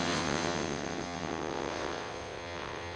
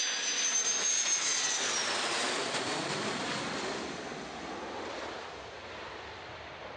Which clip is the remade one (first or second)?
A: first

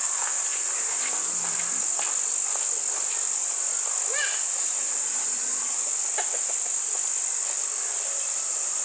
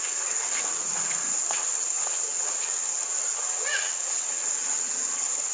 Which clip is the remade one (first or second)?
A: second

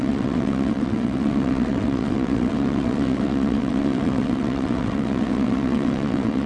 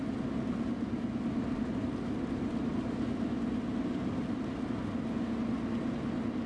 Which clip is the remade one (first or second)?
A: first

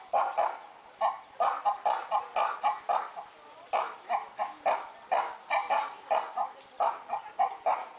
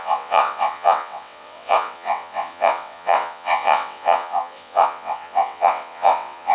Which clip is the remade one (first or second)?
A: second